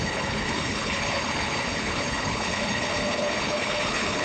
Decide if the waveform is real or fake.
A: fake